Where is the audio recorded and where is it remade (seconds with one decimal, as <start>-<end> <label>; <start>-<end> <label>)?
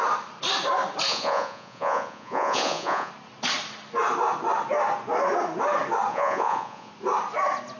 0.0-1.1 recorded; 1.1-3.1 remade; 3.1-6.1 recorded; 6.1-6.9 remade; 6.9-7.8 recorded